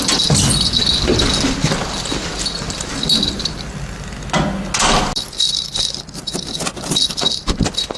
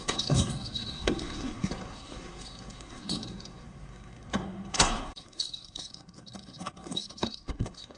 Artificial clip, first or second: second